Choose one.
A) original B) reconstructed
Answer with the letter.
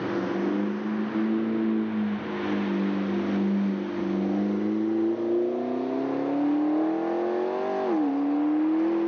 A